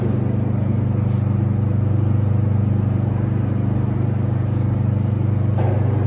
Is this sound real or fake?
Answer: real